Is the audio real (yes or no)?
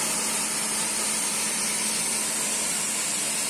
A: yes